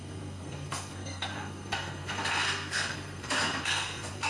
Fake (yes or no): yes